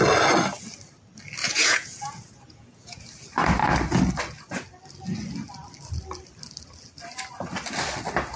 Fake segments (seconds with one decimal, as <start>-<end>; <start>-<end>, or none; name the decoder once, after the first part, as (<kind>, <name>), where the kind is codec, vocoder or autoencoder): 1.4-3.0 (vocoder, Vocos)